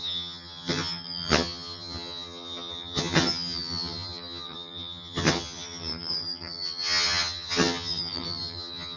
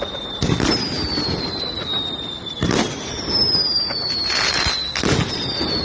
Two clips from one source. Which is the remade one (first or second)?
first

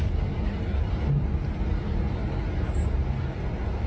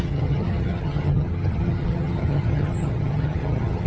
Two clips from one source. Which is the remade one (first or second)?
second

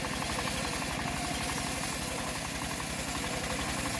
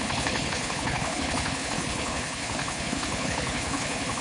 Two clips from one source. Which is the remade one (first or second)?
second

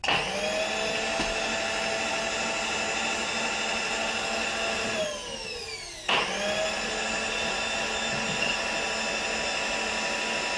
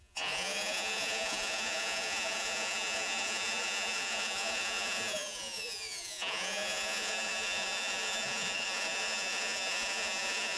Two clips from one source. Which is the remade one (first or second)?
second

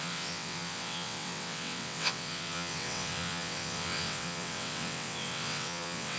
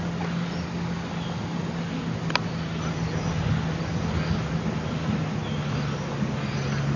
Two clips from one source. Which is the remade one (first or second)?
first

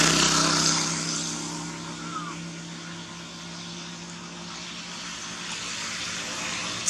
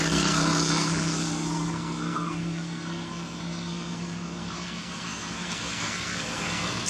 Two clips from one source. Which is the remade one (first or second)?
second